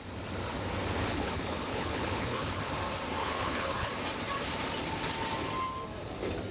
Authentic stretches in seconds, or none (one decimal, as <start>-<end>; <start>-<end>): 0.0-1.1; 2.7-3.2; 3.9-6.5